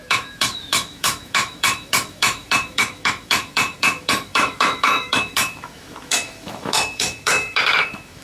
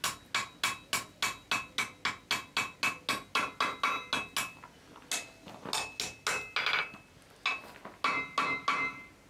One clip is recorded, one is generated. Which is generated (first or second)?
first